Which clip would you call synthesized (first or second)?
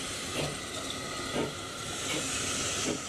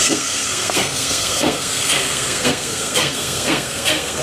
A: second